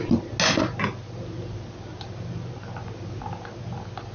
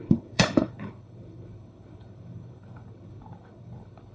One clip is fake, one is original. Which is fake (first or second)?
second